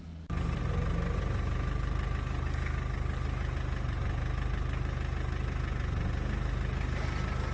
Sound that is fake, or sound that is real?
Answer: real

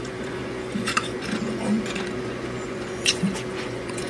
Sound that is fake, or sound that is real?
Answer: fake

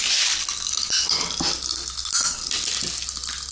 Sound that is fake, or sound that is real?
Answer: real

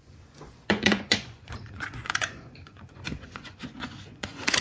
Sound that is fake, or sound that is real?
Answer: fake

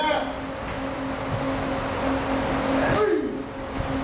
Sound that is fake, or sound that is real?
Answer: real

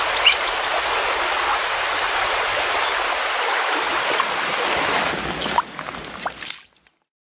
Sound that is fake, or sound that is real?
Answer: real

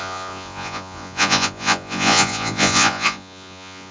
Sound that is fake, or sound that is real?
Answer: fake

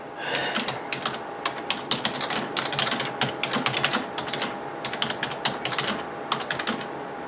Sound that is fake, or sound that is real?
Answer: real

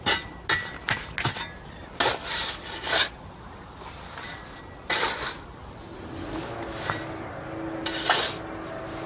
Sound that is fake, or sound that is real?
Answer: real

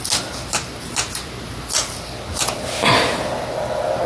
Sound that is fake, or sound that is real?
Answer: real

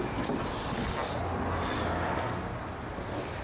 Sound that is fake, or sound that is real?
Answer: real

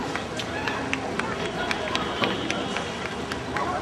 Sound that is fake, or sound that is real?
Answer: real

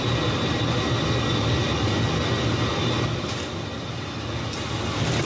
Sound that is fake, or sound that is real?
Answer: real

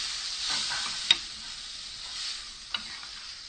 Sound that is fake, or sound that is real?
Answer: real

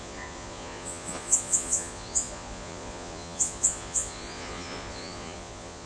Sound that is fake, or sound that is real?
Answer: fake